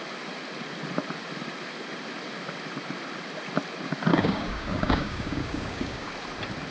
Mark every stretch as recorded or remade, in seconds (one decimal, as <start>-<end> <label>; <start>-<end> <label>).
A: 0.0-4.1 recorded; 4.1-6.1 remade; 6.1-6.7 recorded